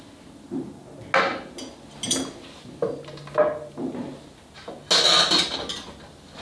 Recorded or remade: recorded